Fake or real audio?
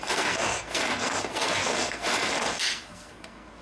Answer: fake